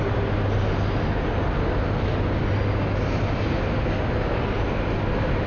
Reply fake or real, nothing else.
real